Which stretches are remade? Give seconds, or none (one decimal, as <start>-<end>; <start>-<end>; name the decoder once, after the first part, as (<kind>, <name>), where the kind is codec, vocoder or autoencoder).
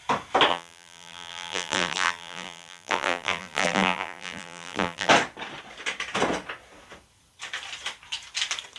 0.5-5.1 (vocoder, BigVGAN v2)